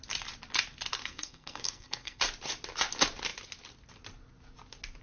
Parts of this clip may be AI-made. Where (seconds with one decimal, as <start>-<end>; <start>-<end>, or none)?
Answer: 1.0-2.2